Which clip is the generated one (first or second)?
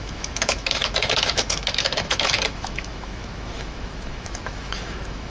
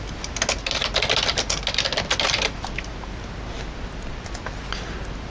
first